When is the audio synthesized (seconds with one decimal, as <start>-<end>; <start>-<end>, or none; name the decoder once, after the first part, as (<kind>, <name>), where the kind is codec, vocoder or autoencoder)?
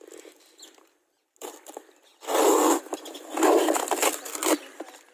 none